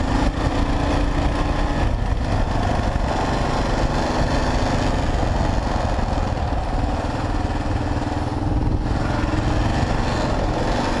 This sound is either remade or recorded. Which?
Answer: recorded